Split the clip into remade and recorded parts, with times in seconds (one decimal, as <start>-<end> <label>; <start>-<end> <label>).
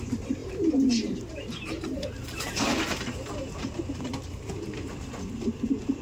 0.0-0.4 recorded; 0.4-4.0 remade; 4.0-6.0 recorded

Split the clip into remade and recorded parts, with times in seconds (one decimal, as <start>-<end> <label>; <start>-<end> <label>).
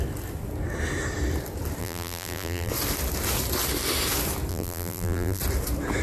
0.0-1.8 recorded; 1.8-2.7 remade; 2.7-4.5 recorded; 4.5-5.4 remade; 5.4-6.0 recorded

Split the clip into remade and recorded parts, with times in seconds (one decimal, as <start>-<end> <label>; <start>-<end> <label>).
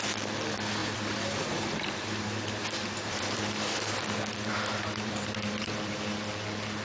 0.0-0.8 recorded; 0.8-4.0 remade; 4.0-4.5 recorded; 4.5-5.9 remade; 5.9-6.8 recorded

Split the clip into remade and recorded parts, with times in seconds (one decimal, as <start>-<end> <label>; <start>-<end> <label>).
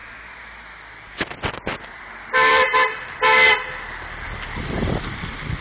0.0-1.9 recorded; 1.9-2.7 remade; 2.7-4.6 recorded; 4.6-5.6 remade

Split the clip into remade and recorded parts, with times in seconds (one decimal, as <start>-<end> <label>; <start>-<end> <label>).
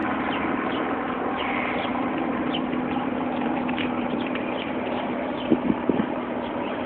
0.0-1.9 recorded; 1.9-6.0 remade; 6.0-6.9 recorded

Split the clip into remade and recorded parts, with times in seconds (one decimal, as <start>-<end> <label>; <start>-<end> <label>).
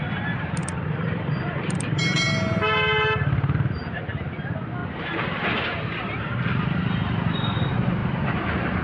0.0-0.6 recorded; 0.6-4.0 remade; 4.0-4.8 recorded; 4.8-6.6 remade; 6.6-8.8 recorded